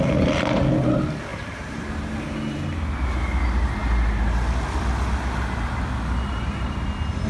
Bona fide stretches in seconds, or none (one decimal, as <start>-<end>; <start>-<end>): 0.0-1.3; 1.8-7.3